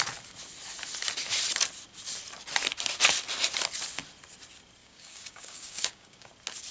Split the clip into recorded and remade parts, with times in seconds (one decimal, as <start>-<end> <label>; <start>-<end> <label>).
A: 0.0-4.8 recorded; 4.8-6.3 remade; 6.3-6.7 recorded